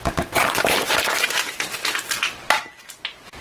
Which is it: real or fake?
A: real